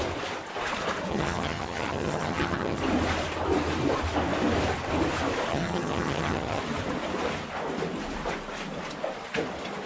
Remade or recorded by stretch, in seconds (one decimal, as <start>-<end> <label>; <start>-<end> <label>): 0.0-1.1 recorded; 1.1-2.8 remade; 2.8-5.5 recorded; 5.5-6.6 remade; 6.6-9.9 recorded